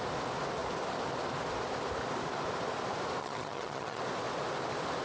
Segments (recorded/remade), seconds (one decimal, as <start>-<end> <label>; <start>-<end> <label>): 0.0-3.2 recorded; 3.2-4.0 remade; 4.0-5.0 recorded